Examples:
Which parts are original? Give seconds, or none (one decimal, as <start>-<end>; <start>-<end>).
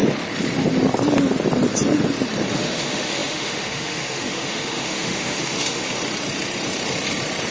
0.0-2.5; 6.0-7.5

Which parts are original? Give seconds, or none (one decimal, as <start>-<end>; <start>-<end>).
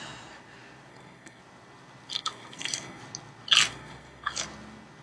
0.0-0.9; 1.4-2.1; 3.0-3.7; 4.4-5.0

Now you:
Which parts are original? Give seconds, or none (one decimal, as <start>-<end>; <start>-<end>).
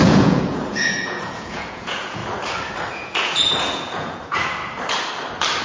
2.2-2.9; 4.6-5.6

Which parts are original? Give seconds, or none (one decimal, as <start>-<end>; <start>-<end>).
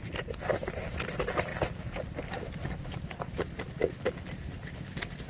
0.0-5.3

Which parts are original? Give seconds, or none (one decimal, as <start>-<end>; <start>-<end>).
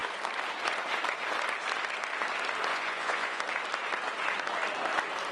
0.0-2.7; 3.4-5.3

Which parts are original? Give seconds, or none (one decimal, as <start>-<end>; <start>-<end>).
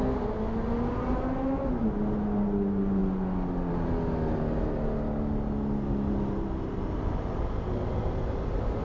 0.0-8.8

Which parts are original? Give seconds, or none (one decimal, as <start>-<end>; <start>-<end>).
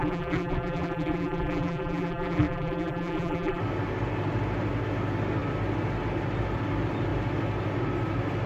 3.6-8.5